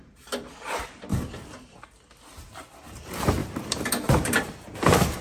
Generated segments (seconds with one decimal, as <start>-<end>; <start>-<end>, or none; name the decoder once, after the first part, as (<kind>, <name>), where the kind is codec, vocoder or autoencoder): 1.1-1.8 (vocoder, BigVGAN v2); 3.4-4.5